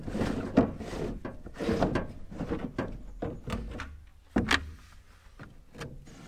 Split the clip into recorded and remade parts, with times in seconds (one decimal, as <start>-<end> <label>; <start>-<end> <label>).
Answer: 0.0-6.3 recorded